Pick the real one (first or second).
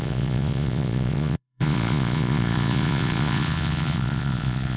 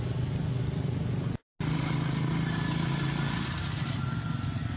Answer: second